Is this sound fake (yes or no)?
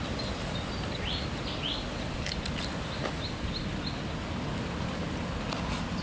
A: no